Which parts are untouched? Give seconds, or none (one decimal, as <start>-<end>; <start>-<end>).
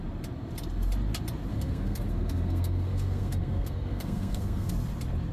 0.0-1.5; 4.7-5.3